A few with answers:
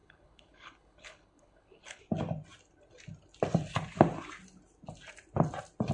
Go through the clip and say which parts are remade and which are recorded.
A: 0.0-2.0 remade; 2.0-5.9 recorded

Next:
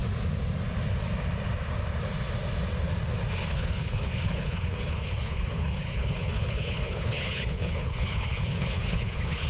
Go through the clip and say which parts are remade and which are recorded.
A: 0.0-3.5 recorded; 3.5-9.5 remade

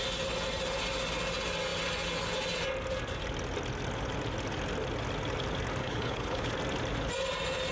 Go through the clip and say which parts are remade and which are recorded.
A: 0.0-5.8 recorded; 5.8-6.5 remade; 6.5-7.7 recorded

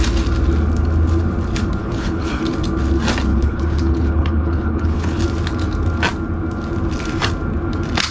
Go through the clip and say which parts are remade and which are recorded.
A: 0.0-1.8 recorded; 1.8-2.4 remade; 2.4-3.3 recorded; 3.3-5.2 remade; 5.2-8.1 recorded

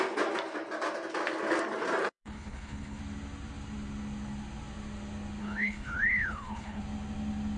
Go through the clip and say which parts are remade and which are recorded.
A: 0.0-2.0 recorded; 2.0-3.0 remade; 3.0-5.4 recorded; 5.4-6.8 remade; 6.8-7.6 recorded

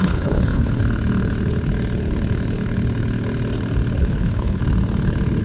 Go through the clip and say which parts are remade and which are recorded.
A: 0.0-0.8 remade; 0.8-4.0 recorded; 4.0-4.6 remade; 4.6-5.4 recorded